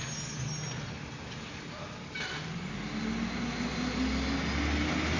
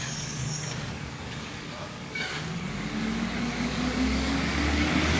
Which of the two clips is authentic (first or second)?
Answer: first